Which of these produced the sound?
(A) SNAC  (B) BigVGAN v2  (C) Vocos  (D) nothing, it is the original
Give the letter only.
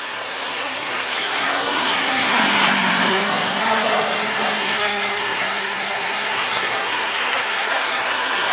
A